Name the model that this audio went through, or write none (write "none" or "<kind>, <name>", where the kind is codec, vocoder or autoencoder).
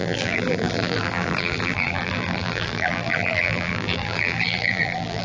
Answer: vocoder, BigVGAN v2